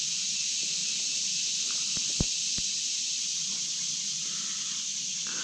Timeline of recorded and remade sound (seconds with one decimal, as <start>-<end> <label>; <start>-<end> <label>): 0.0-0.8 recorded; 0.8-4.0 remade; 4.0-5.4 recorded